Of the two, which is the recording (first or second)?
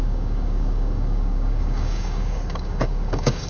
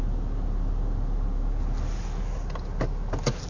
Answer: second